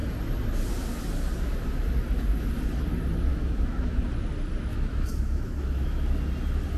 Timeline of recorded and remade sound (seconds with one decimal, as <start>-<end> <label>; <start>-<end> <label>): 0.0-3.3 recorded; 3.3-4.0 remade; 4.0-4.7 recorded; 4.7-6.2 remade; 6.2-6.8 recorded